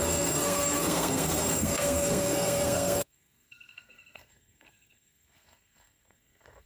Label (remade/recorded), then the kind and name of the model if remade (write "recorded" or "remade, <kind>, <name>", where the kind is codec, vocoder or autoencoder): remade, codec, SNAC